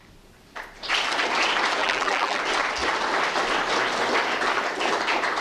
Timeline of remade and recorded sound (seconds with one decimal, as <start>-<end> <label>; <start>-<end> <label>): 0.0-1.8 recorded; 1.8-2.4 remade; 2.4-5.4 recorded